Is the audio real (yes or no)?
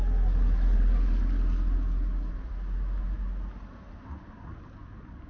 yes